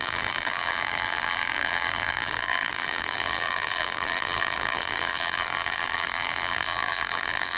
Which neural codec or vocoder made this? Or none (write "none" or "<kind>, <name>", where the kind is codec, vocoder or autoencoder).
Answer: vocoder, BigVGAN v2